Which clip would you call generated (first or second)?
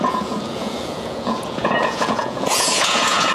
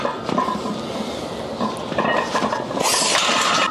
first